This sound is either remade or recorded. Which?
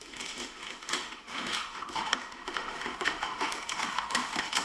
remade